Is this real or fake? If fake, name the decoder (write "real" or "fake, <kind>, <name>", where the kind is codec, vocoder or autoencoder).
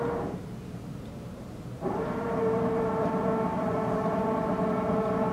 fake, vocoder, BigVGAN v2